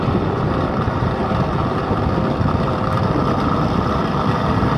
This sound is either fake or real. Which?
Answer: fake